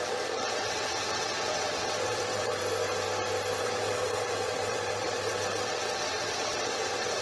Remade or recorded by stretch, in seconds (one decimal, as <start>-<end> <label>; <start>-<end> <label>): 0.0-2.6 remade; 2.6-3.6 recorded; 3.6-7.2 remade